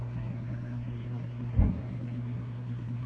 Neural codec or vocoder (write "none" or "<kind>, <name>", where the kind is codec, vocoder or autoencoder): codec, SNAC